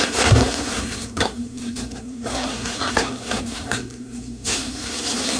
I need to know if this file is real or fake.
fake